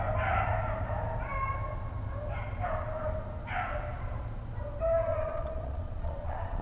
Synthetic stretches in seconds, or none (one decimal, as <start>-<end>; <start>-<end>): 5.1-6.6